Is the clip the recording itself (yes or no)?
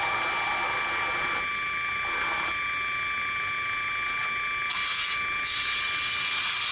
yes